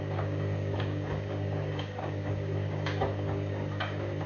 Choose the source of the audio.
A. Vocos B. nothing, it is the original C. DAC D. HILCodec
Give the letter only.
C